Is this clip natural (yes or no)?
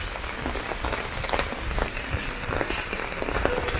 yes